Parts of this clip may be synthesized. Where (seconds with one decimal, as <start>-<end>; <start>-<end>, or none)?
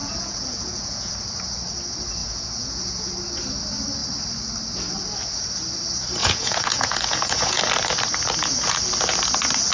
0.0-1.1; 2.2-3.1; 6.2-7.6